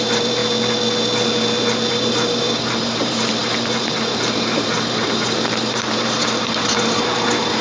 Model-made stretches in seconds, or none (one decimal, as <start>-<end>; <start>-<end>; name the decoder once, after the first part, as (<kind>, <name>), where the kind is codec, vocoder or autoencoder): 0.0-0.4 (vocoder, BigVGAN v2); 1.9-7.6